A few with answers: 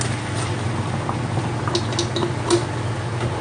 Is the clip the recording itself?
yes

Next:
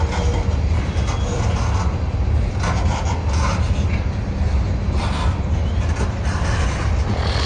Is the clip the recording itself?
yes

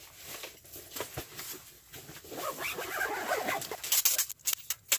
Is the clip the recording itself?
yes